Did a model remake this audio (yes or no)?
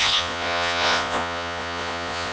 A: yes